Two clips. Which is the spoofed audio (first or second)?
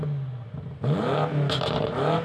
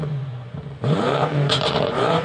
second